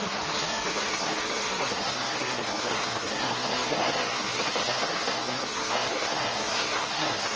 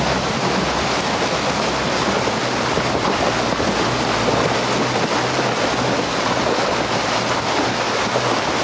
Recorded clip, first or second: second